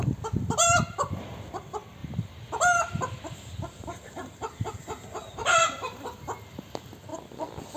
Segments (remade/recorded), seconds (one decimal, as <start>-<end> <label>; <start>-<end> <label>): 0.0-2.0 recorded; 2.0-4.8 remade; 4.8-5.2 recorded; 5.2-6.2 remade; 6.2-7.8 recorded